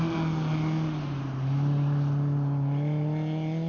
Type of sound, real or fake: real